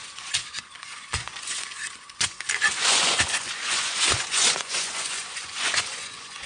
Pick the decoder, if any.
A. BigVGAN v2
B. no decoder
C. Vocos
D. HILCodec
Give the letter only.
C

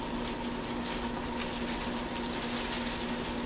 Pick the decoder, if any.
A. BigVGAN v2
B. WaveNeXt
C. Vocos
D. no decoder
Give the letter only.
D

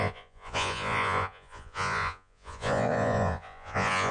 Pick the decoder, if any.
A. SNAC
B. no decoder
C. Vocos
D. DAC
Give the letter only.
C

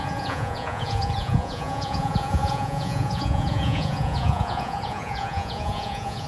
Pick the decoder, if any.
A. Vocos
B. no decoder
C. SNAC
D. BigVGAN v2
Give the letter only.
A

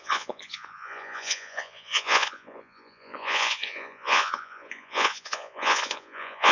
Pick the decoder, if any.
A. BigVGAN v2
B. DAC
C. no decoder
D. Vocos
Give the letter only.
D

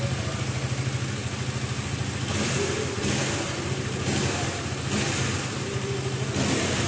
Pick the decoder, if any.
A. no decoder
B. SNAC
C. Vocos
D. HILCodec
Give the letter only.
A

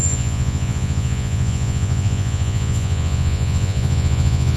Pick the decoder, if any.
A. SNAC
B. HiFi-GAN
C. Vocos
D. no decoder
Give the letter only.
C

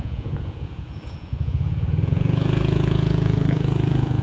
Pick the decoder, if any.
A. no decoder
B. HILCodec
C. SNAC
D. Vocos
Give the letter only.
D